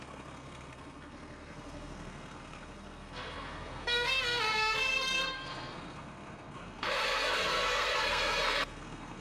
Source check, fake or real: fake